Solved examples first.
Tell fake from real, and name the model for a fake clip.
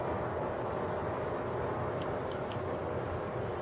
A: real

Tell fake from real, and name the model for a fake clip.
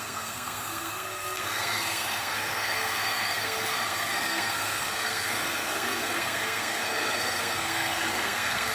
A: fake, codec, SNAC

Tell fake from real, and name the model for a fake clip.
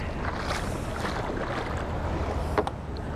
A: real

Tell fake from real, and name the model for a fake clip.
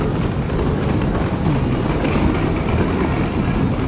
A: real